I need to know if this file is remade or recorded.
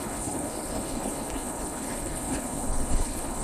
remade